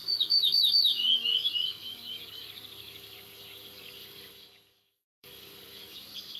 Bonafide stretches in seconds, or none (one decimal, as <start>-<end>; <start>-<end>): none